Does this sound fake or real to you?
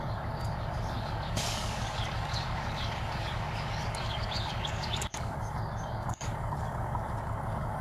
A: fake